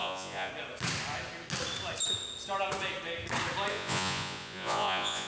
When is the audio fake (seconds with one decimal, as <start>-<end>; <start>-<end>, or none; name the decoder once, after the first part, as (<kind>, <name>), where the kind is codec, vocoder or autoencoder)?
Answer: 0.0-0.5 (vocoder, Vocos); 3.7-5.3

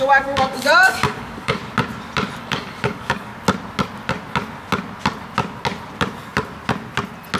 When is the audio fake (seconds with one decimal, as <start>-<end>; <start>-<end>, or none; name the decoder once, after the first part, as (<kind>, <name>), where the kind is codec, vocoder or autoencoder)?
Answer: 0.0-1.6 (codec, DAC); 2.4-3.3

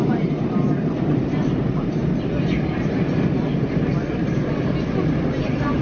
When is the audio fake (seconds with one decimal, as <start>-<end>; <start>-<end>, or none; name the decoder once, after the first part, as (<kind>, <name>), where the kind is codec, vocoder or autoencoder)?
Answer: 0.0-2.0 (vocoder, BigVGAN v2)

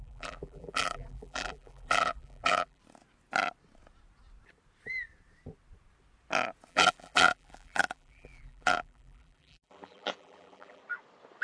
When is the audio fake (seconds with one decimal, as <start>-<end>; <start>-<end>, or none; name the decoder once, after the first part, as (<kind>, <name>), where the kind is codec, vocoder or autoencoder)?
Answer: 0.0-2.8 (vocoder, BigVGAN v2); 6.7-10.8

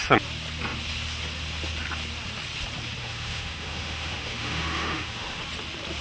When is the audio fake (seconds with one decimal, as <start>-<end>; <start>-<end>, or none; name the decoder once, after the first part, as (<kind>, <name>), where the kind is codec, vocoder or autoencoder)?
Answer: 3.0-5.4 (autoencoder, DAC-VAE)